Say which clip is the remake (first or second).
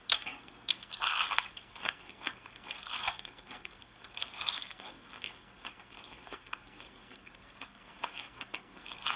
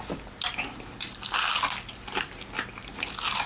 first